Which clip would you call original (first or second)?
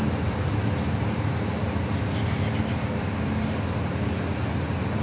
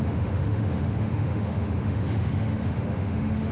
first